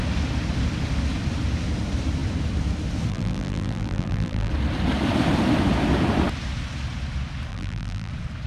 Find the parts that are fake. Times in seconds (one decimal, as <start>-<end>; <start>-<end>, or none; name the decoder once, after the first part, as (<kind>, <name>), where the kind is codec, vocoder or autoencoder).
3.1-4.5 (vocoder, BigVGAN v2); 7.5-8.1